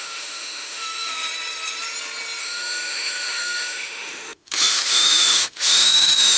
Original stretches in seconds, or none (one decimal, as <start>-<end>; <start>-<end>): 1.1-2.4